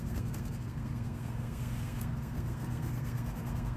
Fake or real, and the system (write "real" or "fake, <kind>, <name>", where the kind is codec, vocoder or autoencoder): fake, codec, SNAC